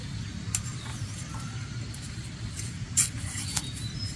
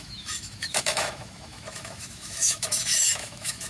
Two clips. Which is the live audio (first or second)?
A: first